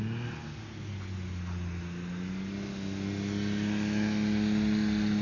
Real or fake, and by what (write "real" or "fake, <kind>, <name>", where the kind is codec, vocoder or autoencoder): real